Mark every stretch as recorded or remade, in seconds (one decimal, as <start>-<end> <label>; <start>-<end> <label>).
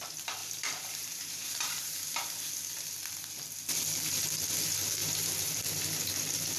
0.0-0.4 recorded; 0.4-2.5 remade; 2.5-5.0 recorded; 5.0-5.6 remade; 5.6-6.6 recorded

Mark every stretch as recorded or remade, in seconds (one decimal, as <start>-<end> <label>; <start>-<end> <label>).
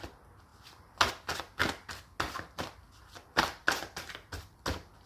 0.0-5.1 recorded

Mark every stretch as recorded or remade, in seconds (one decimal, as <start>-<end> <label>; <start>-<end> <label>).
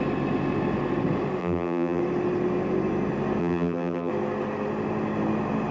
0.0-1.4 recorded; 1.4-2.0 remade; 2.0-3.4 recorded; 3.4-4.1 remade; 4.1-5.7 recorded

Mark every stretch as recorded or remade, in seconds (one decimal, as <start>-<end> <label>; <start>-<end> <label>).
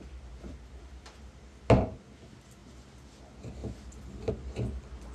0.0-5.1 recorded